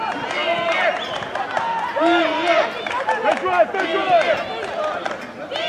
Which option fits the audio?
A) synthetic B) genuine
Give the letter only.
B